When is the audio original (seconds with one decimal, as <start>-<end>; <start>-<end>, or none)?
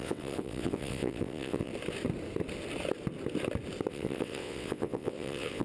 1.7-3.9